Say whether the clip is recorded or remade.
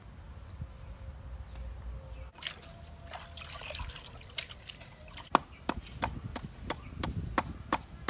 recorded